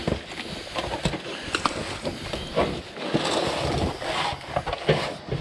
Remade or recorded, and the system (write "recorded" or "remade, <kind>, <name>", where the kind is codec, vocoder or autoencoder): recorded